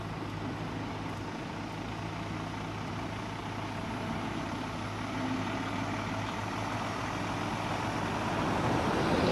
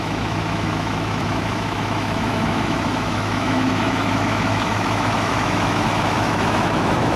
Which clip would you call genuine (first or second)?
first